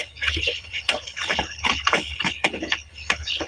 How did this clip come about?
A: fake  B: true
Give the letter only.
A